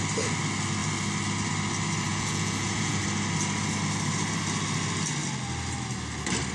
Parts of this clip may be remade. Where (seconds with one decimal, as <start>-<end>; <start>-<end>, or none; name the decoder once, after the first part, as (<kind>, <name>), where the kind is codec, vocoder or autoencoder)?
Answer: 2.1-3.0 (vocoder, Vocos)